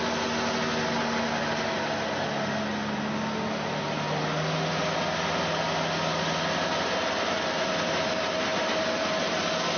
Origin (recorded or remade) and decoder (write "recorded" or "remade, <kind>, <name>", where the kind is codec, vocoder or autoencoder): recorded